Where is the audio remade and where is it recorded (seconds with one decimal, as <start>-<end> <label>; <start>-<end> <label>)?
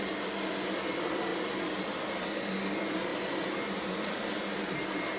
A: 0.0-1.3 recorded; 1.3-2.2 remade; 2.2-5.2 recorded